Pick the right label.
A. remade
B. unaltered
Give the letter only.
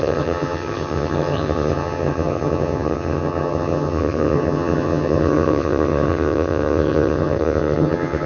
A